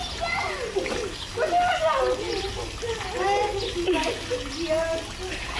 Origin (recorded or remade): recorded